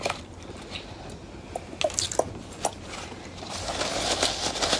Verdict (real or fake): real